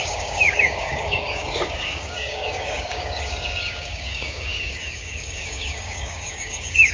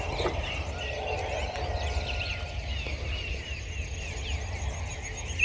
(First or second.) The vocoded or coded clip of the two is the first